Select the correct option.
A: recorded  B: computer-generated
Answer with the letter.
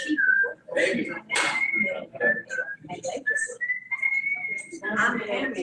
A